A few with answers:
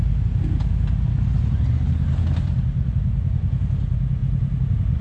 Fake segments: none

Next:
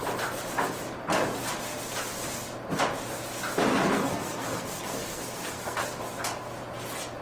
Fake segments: 3.7-5.8 (codec, SNAC)